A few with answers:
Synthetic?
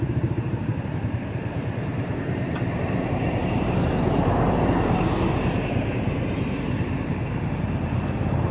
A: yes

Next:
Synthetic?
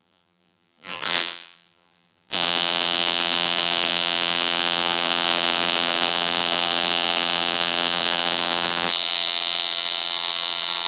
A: yes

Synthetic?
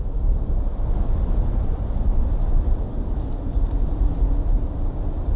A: no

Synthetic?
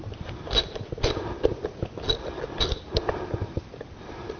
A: no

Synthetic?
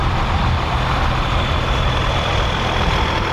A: yes